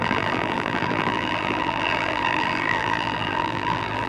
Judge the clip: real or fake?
fake